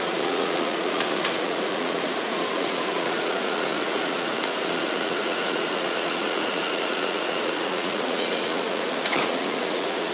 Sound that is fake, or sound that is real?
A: fake